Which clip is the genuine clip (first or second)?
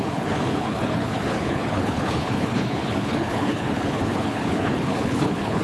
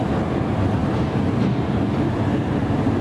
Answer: second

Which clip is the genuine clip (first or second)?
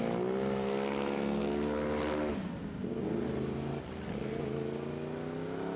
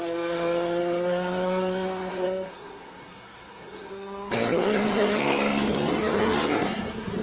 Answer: first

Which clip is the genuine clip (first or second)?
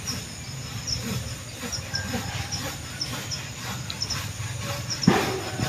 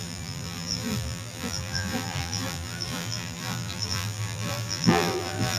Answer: first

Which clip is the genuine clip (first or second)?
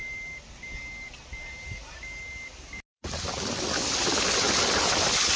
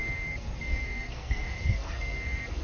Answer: first